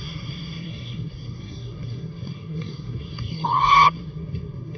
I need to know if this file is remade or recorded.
remade